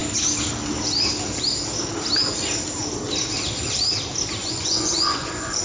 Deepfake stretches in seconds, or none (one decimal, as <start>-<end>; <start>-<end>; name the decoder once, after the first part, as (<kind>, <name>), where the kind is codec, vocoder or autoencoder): 4.4-5.6 (vocoder, Vocos)